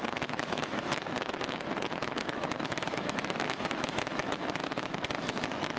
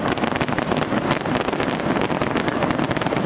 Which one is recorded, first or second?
second